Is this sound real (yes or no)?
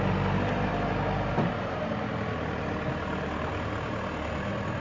yes